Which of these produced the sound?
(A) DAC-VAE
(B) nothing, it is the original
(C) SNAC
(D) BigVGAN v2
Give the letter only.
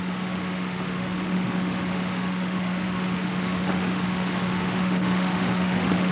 A